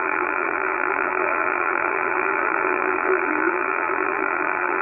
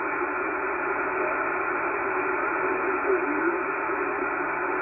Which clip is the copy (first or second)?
first